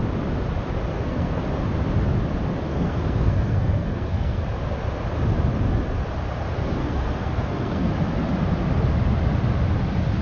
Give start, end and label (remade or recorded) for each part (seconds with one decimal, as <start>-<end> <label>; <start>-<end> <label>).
0.0-0.9 recorded; 0.9-1.4 remade; 1.4-2.7 recorded; 2.7-4.4 remade; 4.4-6.8 recorded; 6.8-7.9 remade; 7.9-10.2 recorded